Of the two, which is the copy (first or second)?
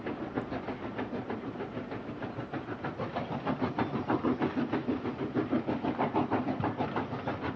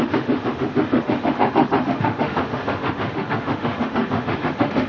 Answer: second